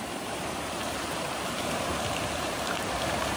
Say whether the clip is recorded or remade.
remade